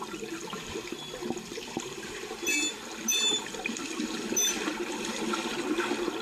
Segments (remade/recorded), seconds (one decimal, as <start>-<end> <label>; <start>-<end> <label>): 0.0-1.2 recorded; 1.2-1.7 remade; 1.7-3.1 recorded; 3.1-3.8 remade; 3.8-6.2 recorded